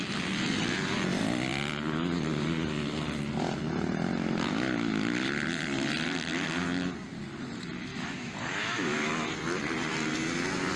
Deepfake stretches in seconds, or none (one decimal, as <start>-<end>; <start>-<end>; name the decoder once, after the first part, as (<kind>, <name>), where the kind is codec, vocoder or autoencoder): 7.9-9.1 (autoencoder, DAC-VAE)